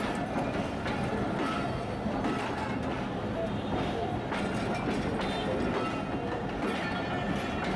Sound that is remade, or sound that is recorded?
recorded